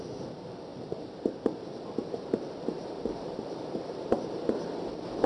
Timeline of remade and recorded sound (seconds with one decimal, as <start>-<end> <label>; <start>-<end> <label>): 0.0-0.7 recorded; 0.7-1.4 remade; 1.4-2.8 recorded; 2.8-4.2 remade; 4.2-5.3 recorded